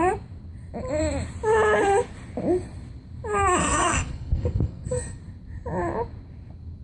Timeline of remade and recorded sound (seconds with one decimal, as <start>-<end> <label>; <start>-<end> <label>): 0.0-3.6 recorded; 3.6-5.2 remade; 5.2-6.8 recorded